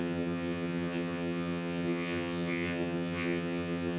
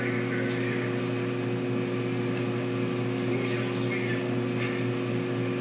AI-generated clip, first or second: first